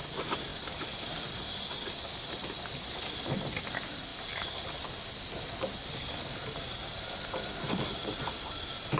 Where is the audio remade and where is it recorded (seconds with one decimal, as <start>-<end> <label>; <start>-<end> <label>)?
0.0-9.0 recorded